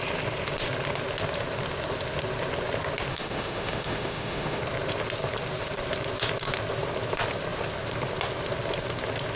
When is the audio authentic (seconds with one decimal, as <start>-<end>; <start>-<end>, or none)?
0.0-3.1; 4.6-9.4